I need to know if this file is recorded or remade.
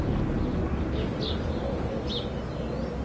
recorded